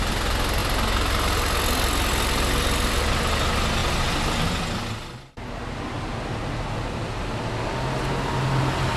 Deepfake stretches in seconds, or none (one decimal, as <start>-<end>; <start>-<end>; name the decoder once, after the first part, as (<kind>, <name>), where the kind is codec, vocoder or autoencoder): none